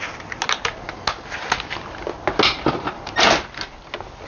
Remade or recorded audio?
recorded